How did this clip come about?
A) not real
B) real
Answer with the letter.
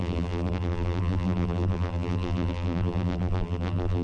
A